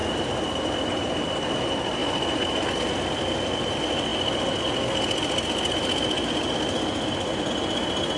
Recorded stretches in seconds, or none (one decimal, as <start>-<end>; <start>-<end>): 0.0-8.2